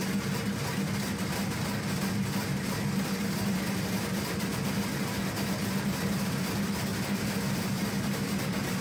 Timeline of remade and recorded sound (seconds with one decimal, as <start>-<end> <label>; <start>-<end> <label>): 0.0-8.8 recorded